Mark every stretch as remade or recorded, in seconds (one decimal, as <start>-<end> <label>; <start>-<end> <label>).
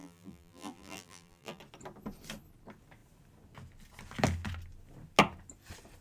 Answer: 0.0-1.6 remade; 1.6-6.0 recorded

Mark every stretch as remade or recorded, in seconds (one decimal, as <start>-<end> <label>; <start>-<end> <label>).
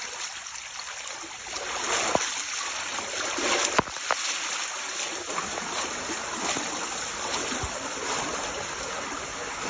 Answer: 0.0-9.7 recorded